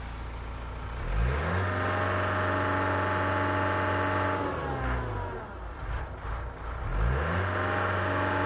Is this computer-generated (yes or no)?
no